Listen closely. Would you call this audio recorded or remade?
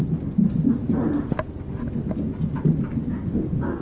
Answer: recorded